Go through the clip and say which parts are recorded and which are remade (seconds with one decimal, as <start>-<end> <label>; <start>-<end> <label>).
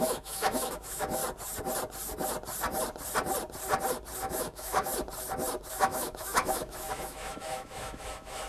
0.0-1.2 remade; 1.2-4.2 recorded; 4.2-4.9 remade; 4.9-5.7 recorded; 5.7-8.5 remade